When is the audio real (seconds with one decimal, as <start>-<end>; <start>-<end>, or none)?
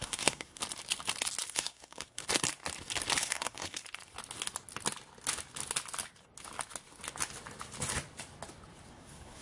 0.6-1.5; 2.2-3.2; 3.8-8.9